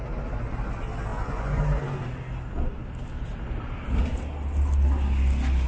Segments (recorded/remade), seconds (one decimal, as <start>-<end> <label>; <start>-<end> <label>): 0.0-1.1 recorded; 1.1-1.6 remade; 1.6-5.7 recorded

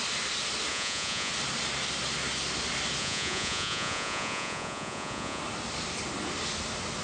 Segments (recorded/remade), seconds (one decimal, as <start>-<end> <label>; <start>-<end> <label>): 0.0-0.7 recorded; 0.7-1.3 remade; 1.3-3.0 recorded; 3.0-5.4 remade; 5.4-7.0 recorded

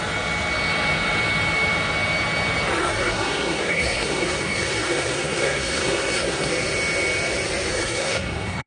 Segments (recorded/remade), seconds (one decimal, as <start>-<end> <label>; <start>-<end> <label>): 0.0-2.8 recorded; 2.8-6.5 remade; 6.5-7.7 recorded; 7.7-8.7 remade

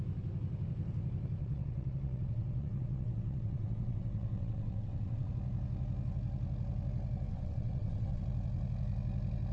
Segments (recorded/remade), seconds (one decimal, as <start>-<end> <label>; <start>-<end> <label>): 0.0-1.4 recorded; 1.4-5.3 remade; 5.3-7.3 recorded; 7.3-8.2 remade; 8.2-9.5 recorded

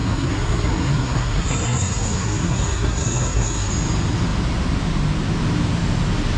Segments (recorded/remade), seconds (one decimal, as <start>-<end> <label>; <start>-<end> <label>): 0.0-3.7 remade; 3.7-6.4 recorded